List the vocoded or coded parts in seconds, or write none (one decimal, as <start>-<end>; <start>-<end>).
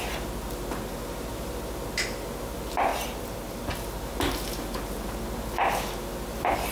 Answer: none